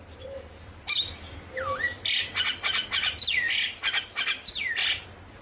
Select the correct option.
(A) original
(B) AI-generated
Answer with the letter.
A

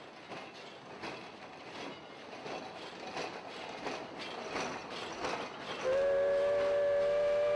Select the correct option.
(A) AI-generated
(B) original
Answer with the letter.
B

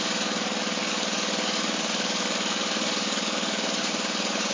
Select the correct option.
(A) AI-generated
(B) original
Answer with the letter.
A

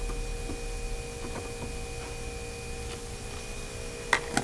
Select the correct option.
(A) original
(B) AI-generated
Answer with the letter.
A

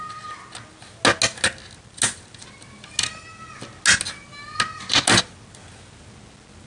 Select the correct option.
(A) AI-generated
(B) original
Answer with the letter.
B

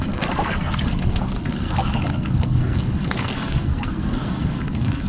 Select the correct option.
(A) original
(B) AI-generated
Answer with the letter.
B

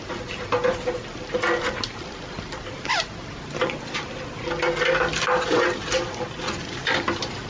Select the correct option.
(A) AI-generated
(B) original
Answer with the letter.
B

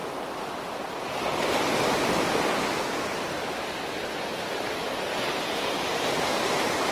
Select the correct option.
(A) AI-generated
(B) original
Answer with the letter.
B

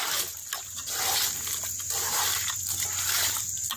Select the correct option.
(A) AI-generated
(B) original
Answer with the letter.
B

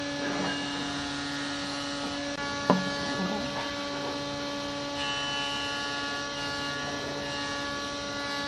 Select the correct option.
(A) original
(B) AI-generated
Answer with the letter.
A